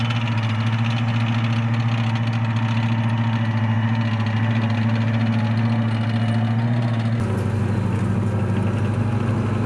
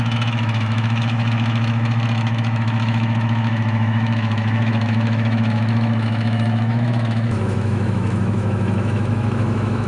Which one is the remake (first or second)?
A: second